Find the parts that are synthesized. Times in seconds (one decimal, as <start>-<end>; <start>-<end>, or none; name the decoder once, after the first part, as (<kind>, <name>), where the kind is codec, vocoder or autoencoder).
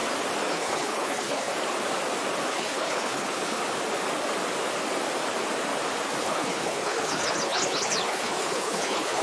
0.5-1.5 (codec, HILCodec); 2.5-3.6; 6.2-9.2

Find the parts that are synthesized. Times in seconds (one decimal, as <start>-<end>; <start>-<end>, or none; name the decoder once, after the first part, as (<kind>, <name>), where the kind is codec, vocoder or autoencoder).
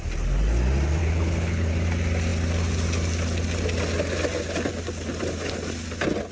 1.0-1.7 (codec, HILCodec)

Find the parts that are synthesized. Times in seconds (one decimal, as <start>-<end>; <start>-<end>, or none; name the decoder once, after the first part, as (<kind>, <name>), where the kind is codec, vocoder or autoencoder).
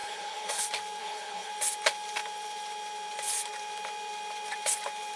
0.0-0.6 (codec, HILCodec); 1.0-1.5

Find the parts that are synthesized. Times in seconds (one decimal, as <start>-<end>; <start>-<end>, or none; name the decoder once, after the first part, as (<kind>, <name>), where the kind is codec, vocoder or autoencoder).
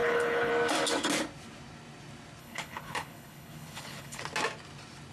0.0-0.5 (codec, HILCodec); 2.4-4.2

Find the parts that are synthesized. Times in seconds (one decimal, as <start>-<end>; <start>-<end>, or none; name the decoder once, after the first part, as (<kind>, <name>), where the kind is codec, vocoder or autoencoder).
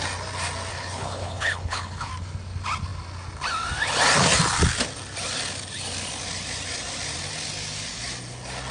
0.7-2.1 (codec, HILCodec)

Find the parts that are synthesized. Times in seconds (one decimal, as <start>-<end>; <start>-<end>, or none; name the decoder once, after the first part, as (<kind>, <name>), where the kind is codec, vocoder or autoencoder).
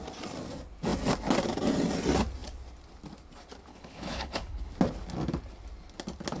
3.7-4.7 (codec, HILCodec)